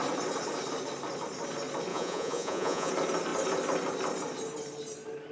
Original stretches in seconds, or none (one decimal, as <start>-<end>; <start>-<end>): 0.0-1.9; 2.9-5.3